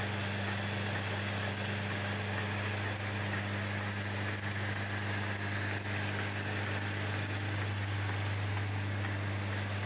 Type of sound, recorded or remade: recorded